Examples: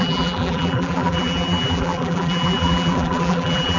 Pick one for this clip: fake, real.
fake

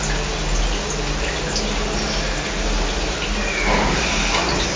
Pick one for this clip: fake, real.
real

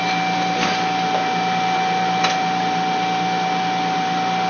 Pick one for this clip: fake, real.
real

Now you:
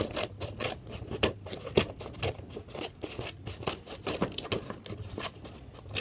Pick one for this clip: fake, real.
real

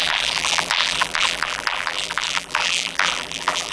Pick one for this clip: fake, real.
fake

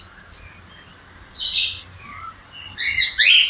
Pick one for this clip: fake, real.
real